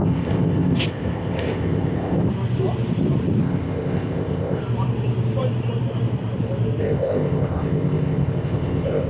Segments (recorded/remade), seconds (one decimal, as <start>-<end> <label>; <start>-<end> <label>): 0.0-2.3 remade; 2.3-3.4 recorded; 3.4-4.6 remade; 4.6-6.8 recorded; 6.8-9.1 remade